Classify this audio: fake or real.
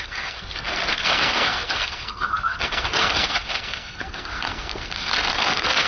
fake